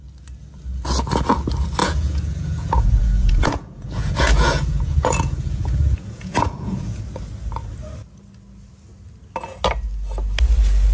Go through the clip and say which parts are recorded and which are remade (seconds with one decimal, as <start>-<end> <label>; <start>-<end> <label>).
0.0-1.8 recorded; 1.8-7.0 remade; 7.0-10.9 recorded